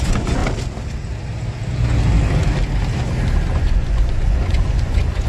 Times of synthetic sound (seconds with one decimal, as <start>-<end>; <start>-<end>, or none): 0.0-0.4; 3.6-5.3